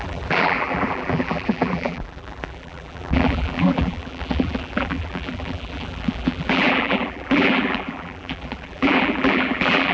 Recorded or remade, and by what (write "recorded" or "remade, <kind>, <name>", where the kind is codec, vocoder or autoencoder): remade, vocoder, BigVGAN v2